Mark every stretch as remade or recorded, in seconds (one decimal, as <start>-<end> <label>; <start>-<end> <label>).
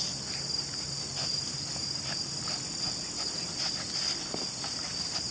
0.0-5.3 recorded